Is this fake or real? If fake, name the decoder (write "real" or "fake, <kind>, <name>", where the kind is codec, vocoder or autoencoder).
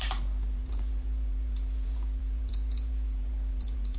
fake, vocoder, BigVGAN v2